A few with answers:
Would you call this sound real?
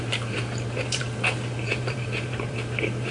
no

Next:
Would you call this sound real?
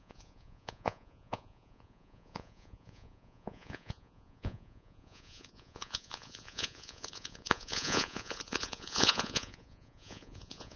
no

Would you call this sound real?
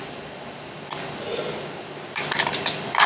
yes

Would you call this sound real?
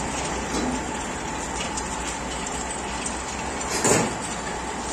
yes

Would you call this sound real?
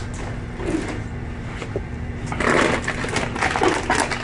yes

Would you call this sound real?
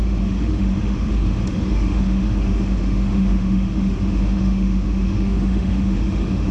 no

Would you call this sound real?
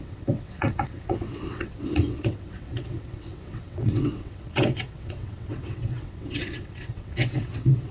no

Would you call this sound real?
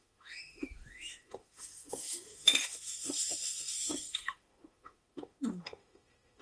no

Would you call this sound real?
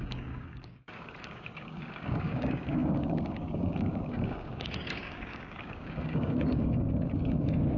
no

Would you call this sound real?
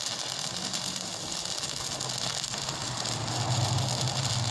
yes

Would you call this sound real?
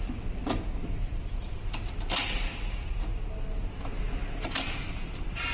yes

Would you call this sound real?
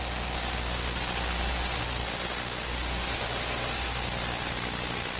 yes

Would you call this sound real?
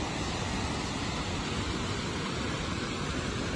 yes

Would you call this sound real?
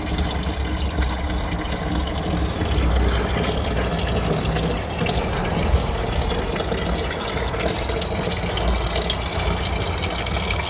yes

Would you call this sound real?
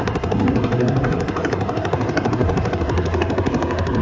no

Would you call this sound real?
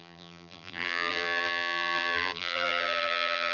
no